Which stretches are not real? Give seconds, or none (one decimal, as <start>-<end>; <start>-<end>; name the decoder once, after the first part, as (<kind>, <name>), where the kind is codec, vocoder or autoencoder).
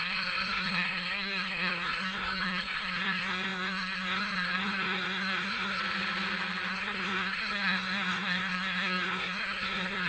0.0-5.8 (codec, SNAC); 6.7-10.1